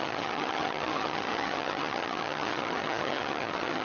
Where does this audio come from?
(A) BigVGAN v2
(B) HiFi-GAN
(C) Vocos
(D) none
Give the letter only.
B